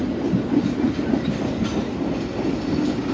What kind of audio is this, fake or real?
real